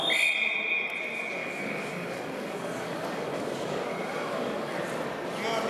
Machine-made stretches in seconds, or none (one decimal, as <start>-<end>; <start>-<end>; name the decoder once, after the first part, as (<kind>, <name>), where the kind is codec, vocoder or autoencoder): 1.4-4.8 (codec, DAC)